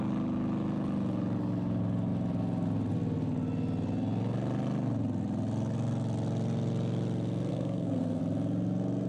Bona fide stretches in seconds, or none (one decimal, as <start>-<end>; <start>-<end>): 0.0-7.5; 8.2-9.1